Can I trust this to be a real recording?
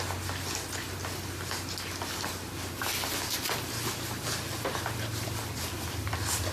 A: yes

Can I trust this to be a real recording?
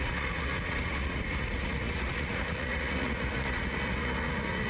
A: no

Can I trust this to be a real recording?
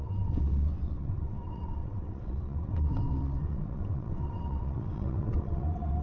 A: no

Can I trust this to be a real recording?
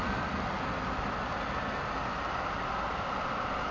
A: yes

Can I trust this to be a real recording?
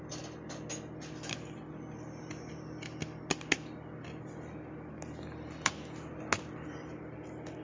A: yes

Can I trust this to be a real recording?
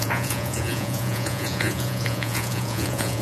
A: no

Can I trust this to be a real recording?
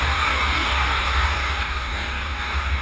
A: no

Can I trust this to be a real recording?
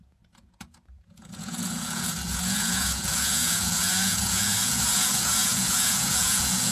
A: no